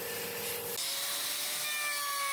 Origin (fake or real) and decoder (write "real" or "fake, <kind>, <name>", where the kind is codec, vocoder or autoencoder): real